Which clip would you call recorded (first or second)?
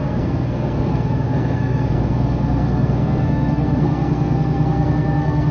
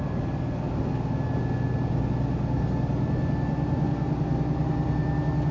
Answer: second